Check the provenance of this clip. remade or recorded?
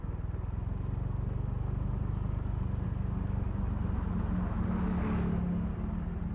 recorded